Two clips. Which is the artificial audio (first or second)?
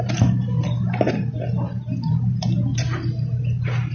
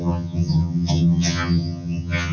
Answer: second